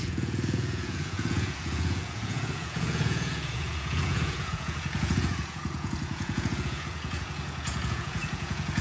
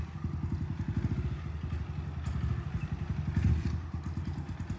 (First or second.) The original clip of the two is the second